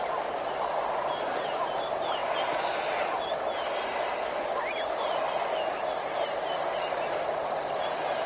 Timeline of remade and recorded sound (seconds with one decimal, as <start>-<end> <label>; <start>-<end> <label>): 0.0-8.3 recorded